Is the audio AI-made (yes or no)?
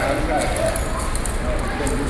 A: no